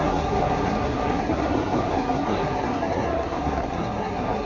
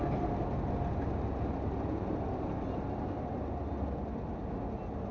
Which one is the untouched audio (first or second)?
second